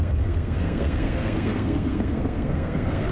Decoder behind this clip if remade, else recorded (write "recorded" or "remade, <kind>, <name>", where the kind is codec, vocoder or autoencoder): remade, codec, SNAC